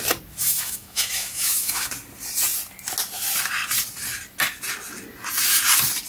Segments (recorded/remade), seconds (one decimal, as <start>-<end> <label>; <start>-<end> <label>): 0.0-0.4 recorded; 0.4-1.9 remade; 1.9-6.1 recorded